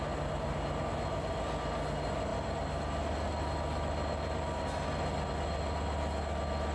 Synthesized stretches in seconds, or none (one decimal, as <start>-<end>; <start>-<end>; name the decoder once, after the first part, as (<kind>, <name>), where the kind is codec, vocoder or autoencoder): none